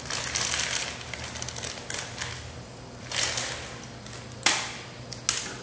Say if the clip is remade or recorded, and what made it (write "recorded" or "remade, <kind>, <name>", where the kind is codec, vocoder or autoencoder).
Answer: recorded